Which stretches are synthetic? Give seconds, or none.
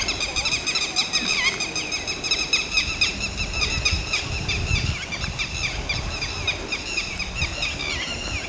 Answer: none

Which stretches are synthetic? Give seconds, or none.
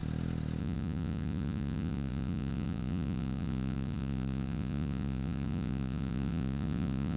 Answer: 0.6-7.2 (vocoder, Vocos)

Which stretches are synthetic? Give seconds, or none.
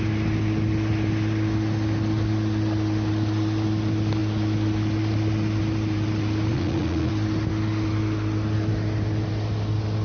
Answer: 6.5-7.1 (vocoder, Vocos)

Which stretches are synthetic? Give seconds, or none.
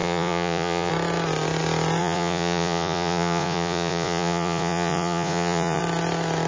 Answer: 0.0-0.9 (vocoder, Vocos); 2.0-5.8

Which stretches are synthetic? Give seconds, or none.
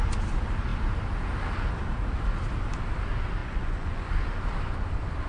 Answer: 3.4-4.1 (vocoder, Vocos)